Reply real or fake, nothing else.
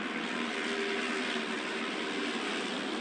real